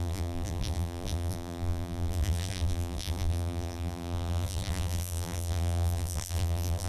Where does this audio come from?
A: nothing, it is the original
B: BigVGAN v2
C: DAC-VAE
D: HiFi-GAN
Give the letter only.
B